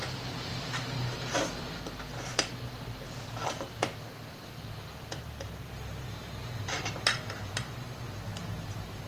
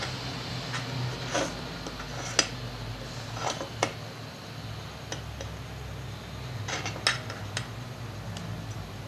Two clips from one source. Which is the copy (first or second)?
first